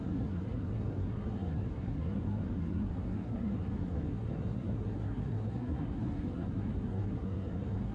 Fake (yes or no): yes